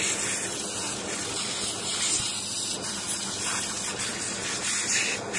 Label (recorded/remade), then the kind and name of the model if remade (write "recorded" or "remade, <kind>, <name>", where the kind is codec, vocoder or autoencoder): recorded